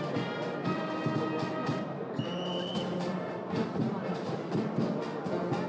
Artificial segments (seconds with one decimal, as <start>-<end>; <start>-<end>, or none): 1.6-5.0